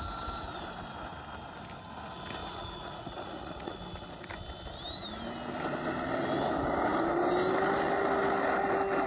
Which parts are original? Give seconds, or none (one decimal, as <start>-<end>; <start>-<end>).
0.0-2.4; 3.8-9.1